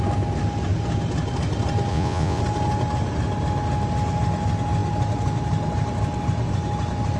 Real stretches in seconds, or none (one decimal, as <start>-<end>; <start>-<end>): 0.0-1.9; 2.4-7.2